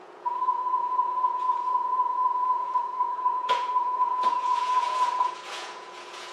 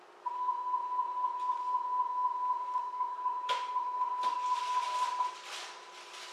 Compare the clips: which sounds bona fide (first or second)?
second